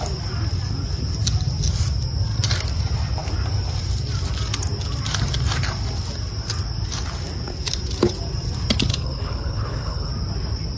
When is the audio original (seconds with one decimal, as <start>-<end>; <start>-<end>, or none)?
0.0-8.9; 10.1-10.8